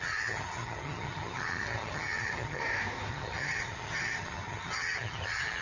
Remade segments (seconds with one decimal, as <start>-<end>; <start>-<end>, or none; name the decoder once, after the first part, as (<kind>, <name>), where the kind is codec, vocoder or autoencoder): 0.0-2.6 (vocoder, HiFi-GAN); 3.1-5.6